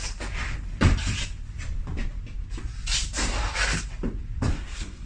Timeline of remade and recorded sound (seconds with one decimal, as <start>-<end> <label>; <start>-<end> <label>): 0.0-4.5 recorded; 4.5-5.1 remade